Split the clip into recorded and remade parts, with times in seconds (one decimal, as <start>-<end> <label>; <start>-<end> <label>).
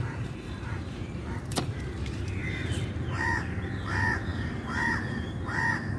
0.0-2.4 remade; 2.4-3.2 recorded; 3.2-6.0 remade